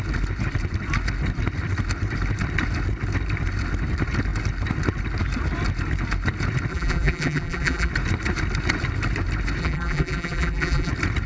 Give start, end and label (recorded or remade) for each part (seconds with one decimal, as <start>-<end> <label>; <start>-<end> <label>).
0.0-6.7 recorded; 6.7-7.9 remade; 7.9-9.6 recorded; 9.6-10.9 remade; 10.9-11.3 recorded